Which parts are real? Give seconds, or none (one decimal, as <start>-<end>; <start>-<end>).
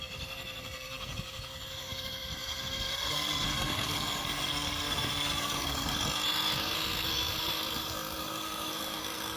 6.0-6.6